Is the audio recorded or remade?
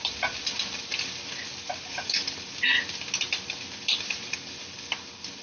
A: recorded